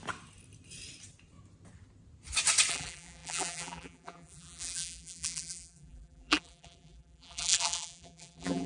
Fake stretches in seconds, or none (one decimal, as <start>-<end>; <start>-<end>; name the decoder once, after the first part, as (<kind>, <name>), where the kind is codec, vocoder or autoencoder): 2.7-8.7 (vocoder, BigVGAN v2)